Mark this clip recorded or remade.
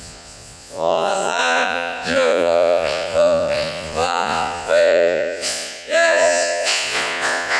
remade